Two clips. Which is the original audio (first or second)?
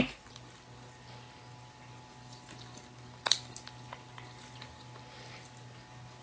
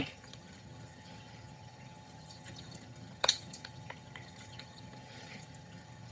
first